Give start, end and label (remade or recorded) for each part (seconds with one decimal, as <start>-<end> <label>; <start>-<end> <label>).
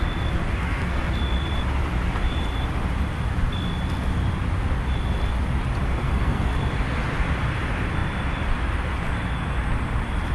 0.0-0.6 recorded; 0.6-1.1 remade; 1.1-5.8 recorded; 5.8-6.5 remade; 6.5-10.3 recorded